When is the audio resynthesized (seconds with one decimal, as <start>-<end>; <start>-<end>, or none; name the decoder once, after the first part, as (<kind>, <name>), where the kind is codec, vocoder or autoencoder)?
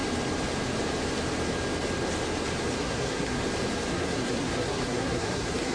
2.7-3.4 (codec, SNAC); 3.9-5.7